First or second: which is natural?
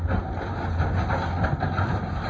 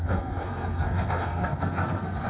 first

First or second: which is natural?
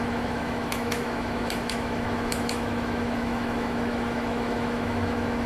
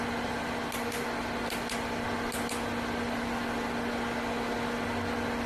second